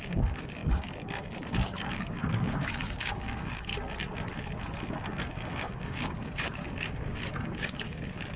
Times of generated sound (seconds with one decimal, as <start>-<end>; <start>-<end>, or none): 0.0-3.7; 5.3-8.4